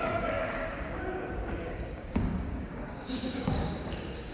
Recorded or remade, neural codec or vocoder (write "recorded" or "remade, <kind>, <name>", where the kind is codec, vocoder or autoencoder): remade, codec, DAC